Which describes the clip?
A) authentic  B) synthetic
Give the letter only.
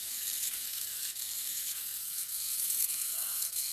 B